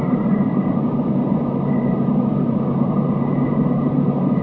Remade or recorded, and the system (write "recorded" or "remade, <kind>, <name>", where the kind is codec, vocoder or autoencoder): remade, vocoder, BigVGAN v2